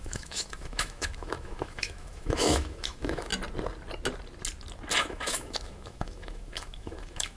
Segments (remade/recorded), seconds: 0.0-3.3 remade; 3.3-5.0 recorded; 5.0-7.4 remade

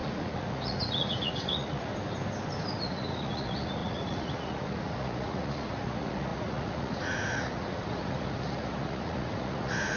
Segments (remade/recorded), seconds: 0.0-1.9 remade; 1.9-2.8 recorded; 2.8-10.0 remade

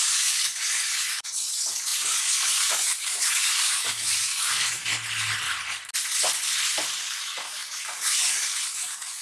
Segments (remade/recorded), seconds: 0.0-4.9 remade; 4.9-7.0 recorded; 7.0-9.2 remade

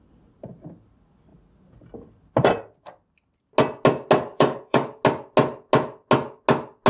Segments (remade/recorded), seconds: 0.0-4.3 recorded; 4.3-5.0 remade; 5.0-6.9 recorded

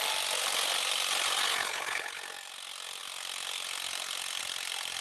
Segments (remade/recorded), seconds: 0.0-1.6 recorded; 1.6-2.2 remade; 2.2-5.0 recorded

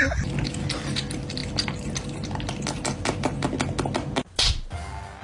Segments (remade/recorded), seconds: 0.0-5.2 recorded

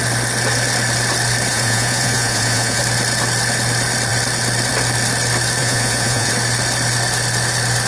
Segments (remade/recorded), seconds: 0.0-1.5 recorded; 1.5-2.8 remade; 2.8-5.6 recorded; 5.6-6.3 remade; 6.3-7.9 recorded